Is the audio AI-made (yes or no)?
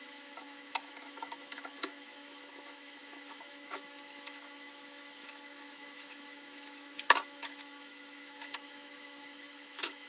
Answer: yes